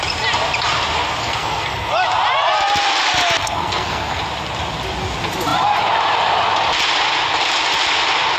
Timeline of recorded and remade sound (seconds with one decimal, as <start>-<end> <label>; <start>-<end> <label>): 0.0-1.2 recorded; 1.2-1.9 remade; 1.9-3.4 recorded; 3.4-4.2 remade; 4.2-8.4 recorded